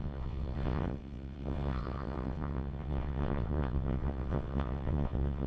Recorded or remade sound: remade